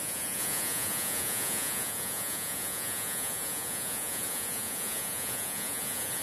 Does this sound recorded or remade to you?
remade